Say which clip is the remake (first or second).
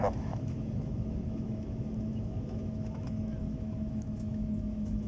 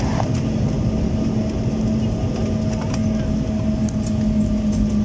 first